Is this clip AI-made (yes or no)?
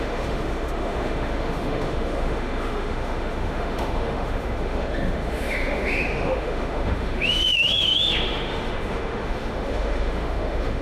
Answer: yes